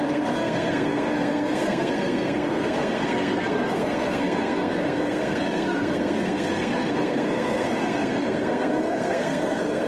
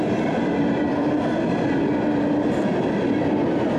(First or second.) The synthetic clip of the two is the first